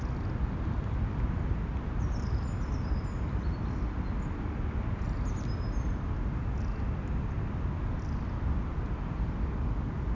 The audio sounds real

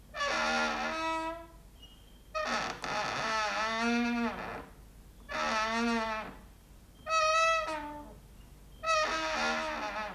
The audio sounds real